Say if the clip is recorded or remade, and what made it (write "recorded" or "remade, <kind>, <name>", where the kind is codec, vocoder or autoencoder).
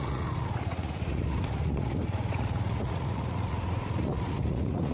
remade, vocoder, Vocos